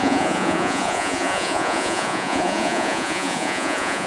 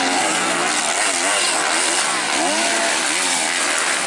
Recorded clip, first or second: second